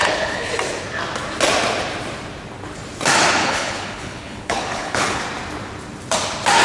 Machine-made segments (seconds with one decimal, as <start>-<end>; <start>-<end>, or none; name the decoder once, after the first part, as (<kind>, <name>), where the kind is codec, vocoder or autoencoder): 0.0-0.5 (codec, HILCodec); 3.4-5.2